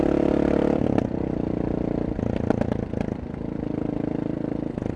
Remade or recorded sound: recorded